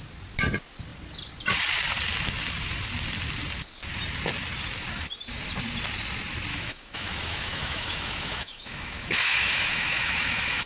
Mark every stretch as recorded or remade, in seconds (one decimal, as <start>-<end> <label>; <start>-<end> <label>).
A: 0.0-6.5 recorded; 6.5-10.7 remade